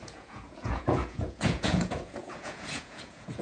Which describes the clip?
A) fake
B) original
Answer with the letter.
A